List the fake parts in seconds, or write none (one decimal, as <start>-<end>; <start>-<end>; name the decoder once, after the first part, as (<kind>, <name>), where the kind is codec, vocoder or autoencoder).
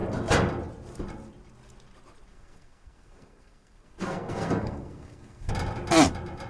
2.3-5.5 (codec, SNAC)